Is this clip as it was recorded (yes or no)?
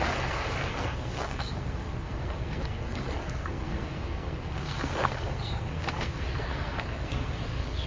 no